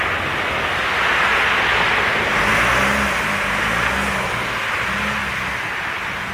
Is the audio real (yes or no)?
yes